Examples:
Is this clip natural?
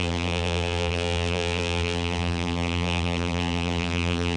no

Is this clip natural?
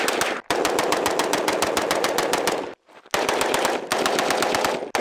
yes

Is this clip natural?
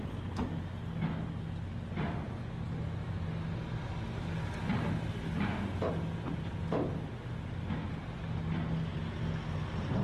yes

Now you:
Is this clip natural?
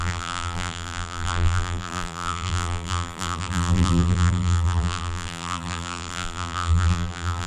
no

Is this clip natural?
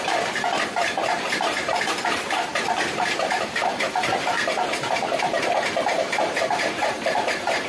no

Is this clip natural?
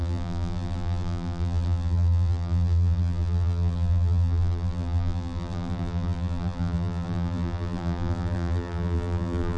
no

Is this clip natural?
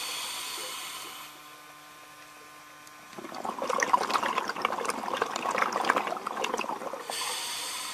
yes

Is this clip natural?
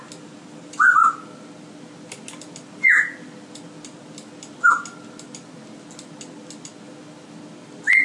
yes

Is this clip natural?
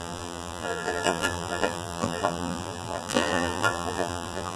no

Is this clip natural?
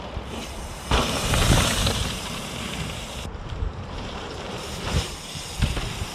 no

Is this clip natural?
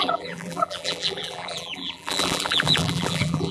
no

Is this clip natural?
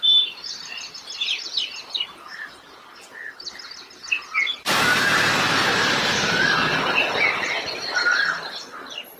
no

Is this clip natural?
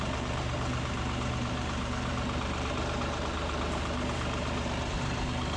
no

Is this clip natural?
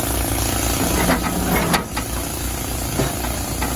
yes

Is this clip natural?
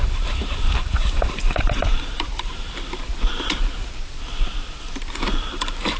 no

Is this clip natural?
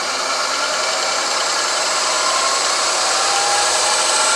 no